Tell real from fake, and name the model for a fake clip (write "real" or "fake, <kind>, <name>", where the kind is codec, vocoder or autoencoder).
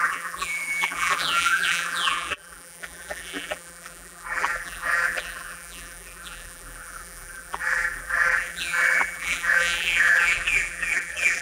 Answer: fake, vocoder, BigVGAN v2